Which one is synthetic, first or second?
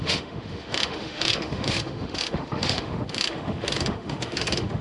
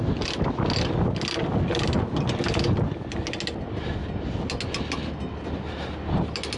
first